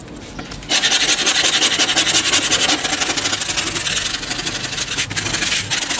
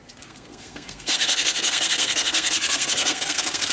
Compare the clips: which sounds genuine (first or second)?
first